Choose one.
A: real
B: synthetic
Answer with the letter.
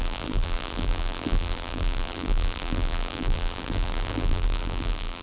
B